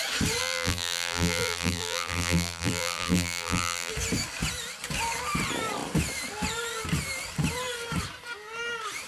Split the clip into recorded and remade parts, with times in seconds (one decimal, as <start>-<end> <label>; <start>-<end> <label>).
0.0-0.4 recorded; 0.4-3.9 remade; 3.9-9.1 recorded